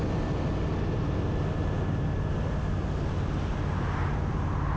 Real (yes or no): yes